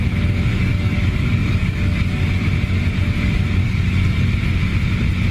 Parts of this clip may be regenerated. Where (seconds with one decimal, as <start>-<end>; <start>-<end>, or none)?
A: 0.5-2.3; 3.6-4.3